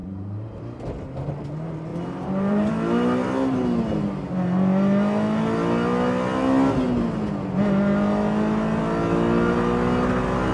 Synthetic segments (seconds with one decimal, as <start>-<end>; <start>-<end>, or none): 0.0-0.6; 1.9-2.7